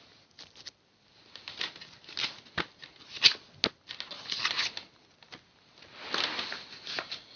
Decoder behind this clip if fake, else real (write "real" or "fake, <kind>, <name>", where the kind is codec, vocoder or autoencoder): real